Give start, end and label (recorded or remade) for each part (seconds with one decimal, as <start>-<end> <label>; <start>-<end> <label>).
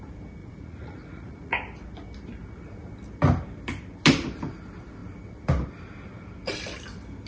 0.0-0.4 recorded; 0.4-1.5 remade; 1.5-7.3 recorded